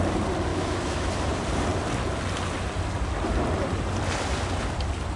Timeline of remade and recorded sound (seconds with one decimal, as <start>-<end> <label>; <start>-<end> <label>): 0.0-0.5 recorded; 0.5-1.1 remade; 1.1-5.2 recorded